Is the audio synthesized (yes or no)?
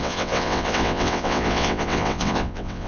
yes